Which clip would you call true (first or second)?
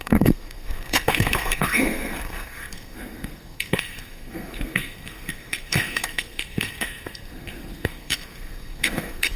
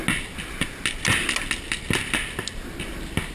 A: second